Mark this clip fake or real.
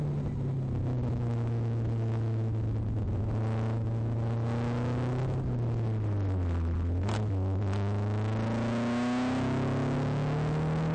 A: real